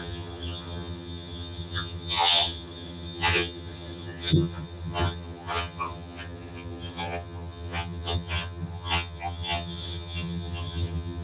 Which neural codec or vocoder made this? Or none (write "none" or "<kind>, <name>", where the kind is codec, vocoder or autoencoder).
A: vocoder, HiFi-GAN